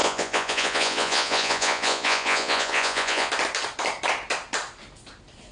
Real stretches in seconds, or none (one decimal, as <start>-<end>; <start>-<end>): 3.3-5.5